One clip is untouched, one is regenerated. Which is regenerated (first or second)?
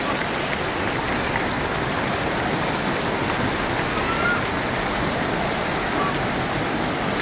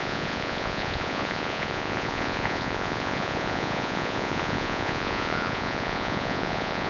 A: second